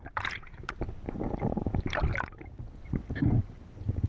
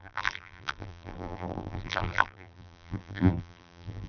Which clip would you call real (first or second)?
first